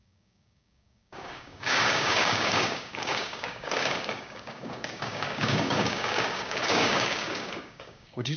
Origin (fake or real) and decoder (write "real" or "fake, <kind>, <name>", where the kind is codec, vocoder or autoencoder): fake, codec, DAC